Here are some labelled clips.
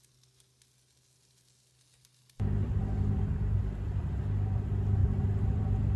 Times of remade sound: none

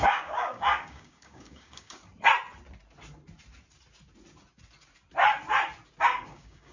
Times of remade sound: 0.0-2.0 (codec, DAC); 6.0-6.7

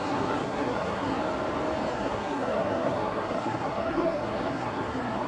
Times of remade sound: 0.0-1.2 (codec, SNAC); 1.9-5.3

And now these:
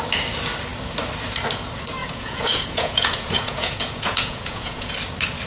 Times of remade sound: 2.0-4.9 (vocoder, Vocos)

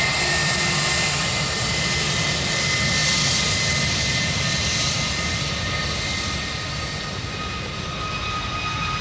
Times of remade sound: none